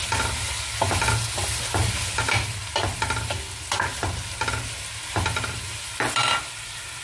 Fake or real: real